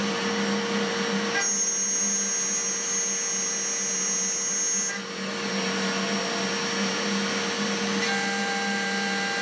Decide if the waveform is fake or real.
real